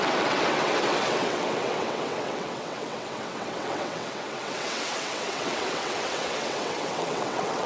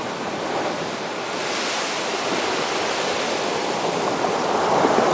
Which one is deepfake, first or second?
first